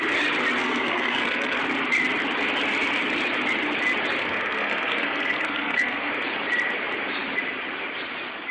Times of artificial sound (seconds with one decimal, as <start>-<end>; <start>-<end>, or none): 0.6-1.6; 4.2-6.1